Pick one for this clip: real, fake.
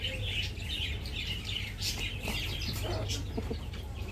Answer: real